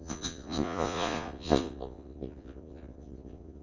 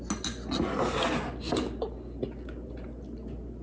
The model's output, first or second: first